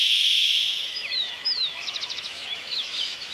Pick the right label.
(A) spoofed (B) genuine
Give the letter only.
A